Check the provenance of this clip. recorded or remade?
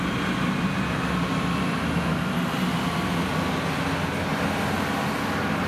recorded